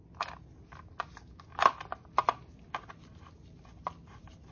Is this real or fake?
real